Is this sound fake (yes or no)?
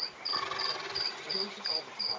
no